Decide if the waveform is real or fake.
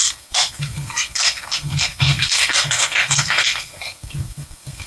fake